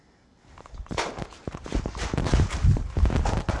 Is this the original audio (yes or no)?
yes